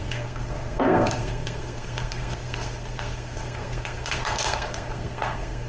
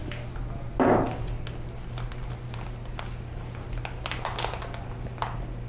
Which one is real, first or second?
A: second